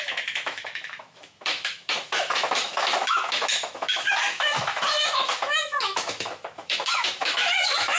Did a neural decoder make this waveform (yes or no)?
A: yes